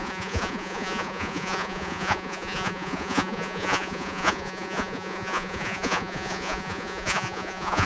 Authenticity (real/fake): fake